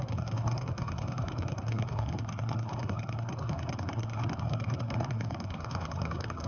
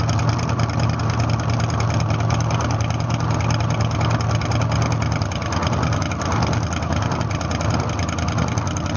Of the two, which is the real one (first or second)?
second